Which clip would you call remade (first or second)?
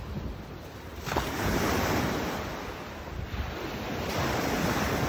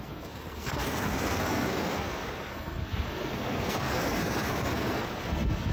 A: second